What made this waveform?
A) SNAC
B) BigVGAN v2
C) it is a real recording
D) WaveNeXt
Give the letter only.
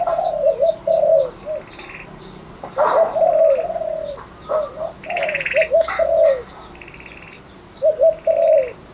C